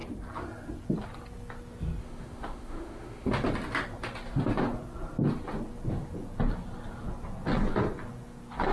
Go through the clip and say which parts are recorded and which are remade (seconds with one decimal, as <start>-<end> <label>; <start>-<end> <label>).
0.0-2.0 recorded; 2.0-3.3 remade; 3.3-8.7 recorded